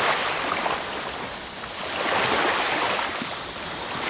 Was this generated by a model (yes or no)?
no